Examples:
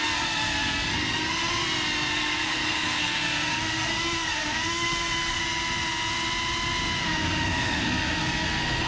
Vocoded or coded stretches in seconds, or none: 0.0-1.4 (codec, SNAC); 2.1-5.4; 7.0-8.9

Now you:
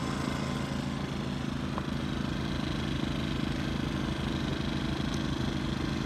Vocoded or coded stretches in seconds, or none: none